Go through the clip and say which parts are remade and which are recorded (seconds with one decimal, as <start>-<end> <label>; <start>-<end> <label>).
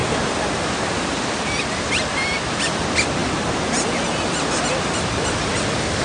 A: 0.0-6.0 recorded